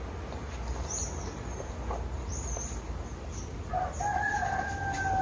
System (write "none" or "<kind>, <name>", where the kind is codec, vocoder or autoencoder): none